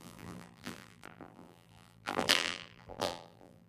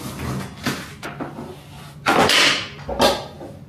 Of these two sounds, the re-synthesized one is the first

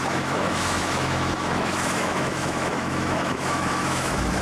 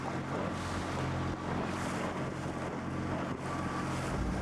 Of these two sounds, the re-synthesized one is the first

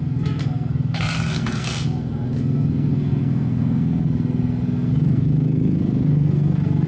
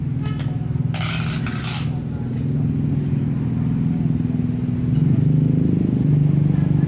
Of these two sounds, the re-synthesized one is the first